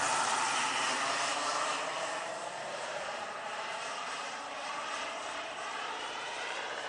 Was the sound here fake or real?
fake